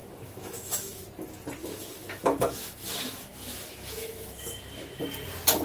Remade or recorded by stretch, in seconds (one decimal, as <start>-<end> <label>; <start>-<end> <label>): 0.0-1.0 remade; 1.0-1.6 recorded; 1.6-5.0 remade; 5.0-5.6 recorded